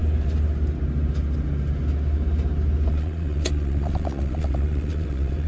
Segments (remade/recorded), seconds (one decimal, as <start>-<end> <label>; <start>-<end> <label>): 0.0-2.9 recorded; 2.9-5.5 remade